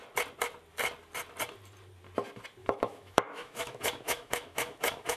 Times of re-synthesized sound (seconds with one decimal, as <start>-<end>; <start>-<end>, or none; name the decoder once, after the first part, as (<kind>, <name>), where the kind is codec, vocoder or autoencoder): 2.6-5.2 (autoencoder, DAC-VAE)

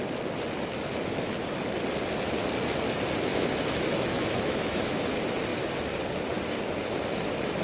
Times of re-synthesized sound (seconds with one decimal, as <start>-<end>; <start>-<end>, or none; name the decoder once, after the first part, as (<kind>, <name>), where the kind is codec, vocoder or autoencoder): 3.3-5.1 (autoencoder, DAC-VAE)

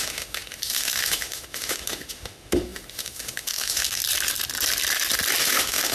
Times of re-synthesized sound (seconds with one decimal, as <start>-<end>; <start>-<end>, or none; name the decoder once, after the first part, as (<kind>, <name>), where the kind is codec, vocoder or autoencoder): 0.0-4.0 (autoencoder, DAC-VAE); 5.4-5.9